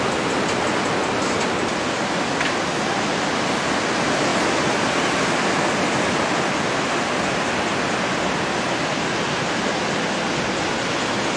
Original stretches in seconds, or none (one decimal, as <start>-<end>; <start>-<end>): 0.0-11.4